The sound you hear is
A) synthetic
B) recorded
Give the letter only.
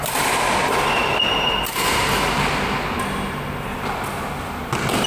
B